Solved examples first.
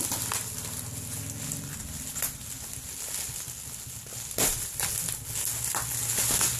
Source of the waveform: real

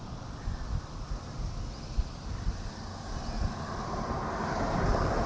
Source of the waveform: real